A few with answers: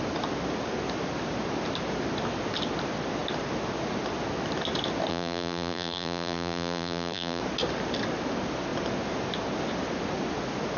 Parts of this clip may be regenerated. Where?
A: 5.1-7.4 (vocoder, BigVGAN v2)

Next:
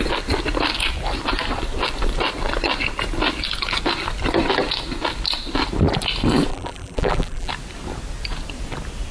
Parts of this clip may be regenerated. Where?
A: 6.5-7.5 (vocoder, BigVGAN v2)

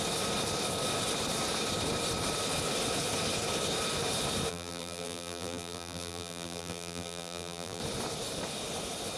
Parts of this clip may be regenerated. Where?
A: 4.5-7.8 (vocoder, BigVGAN v2)

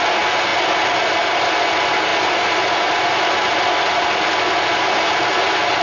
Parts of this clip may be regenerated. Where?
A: none

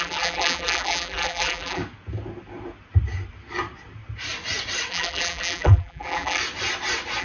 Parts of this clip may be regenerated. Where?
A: 0.0-1.8 (vocoder, BigVGAN v2); 4.9-6.4

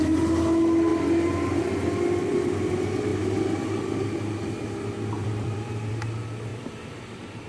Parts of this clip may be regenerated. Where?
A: 5.2-5.9 (vocoder, BigVGAN v2); 6.5-7.0